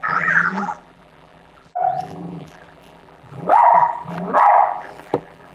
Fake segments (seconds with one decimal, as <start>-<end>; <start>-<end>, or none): 0.0-5.5